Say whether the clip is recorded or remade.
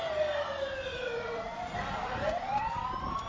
remade